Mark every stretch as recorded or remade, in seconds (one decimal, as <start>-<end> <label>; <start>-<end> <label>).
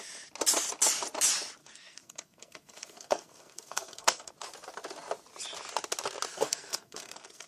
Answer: 0.0-1.6 recorded; 1.6-4.3 remade; 4.3-6.3 recorded; 6.3-7.5 remade